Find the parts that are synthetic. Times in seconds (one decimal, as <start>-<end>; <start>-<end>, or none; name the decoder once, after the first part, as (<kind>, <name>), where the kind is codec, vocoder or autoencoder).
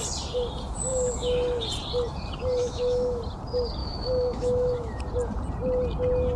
0.9-1.6 (autoencoder, DAC-VAE); 2.6-3.2; 3.8-5.0